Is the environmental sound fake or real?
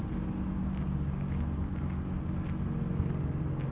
real